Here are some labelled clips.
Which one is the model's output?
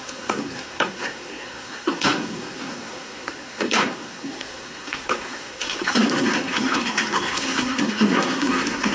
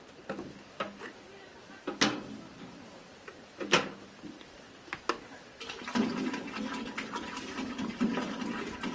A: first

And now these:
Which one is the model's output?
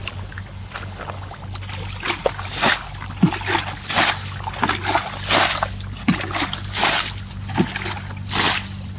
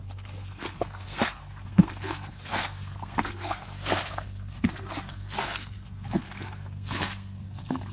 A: second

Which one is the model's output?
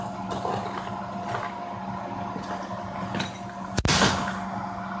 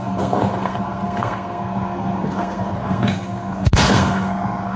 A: second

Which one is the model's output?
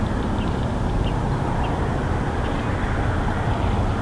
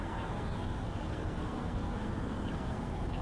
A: second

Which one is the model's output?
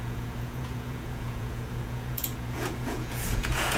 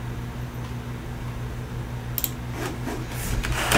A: first